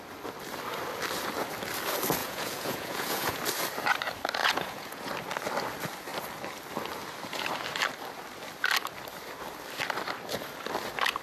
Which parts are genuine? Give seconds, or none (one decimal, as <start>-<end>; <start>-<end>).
0.0-2.2; 3.4-4.4; 5.1-11.2